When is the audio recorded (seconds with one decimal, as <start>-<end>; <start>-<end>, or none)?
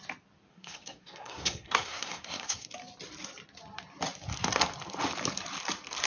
0.0-0.5; 2.7-6.1